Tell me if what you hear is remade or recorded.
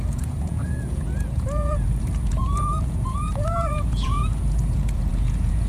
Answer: remade